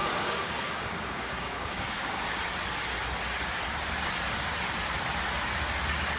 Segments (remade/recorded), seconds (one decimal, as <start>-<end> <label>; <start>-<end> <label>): 0.0-2.2 remade; 2.2-6.2 recorded